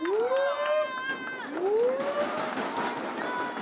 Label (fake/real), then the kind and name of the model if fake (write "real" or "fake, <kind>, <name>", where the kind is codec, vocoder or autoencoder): real